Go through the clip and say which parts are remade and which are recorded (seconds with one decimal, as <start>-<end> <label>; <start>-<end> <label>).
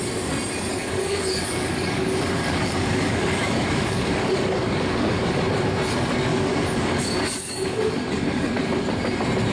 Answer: 0.0-0.7 recorded; 0.7-5.4 remade; 5.4-6.3 recorded; 6.3-8.5 remade; 8.5-9.5 recorded